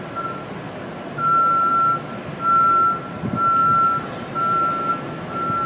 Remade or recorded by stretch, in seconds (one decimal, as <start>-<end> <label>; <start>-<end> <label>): 0.0-5.7 recorded